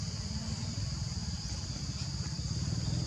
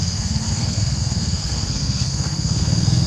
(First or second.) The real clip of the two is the first